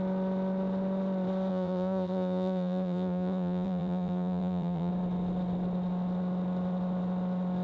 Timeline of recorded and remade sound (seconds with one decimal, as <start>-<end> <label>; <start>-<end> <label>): 0.0-1.5 recorded; 1.5-4.9 remade; 4.9-7.6 recorded